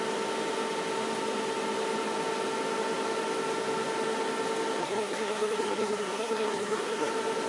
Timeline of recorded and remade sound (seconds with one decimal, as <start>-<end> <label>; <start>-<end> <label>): 0.0-4.8 recorded; 4.8-7.1 remade; 7.1-7.5 recorded